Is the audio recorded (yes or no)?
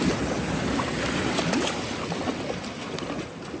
yes